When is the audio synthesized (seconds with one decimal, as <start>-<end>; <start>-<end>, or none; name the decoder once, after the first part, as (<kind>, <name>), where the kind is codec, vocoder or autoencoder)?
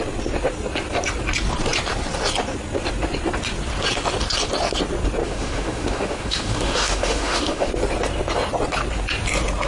5.2-7.7 (autoencoder, DAC-VAE)